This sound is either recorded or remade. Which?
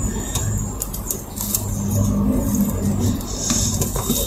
recorded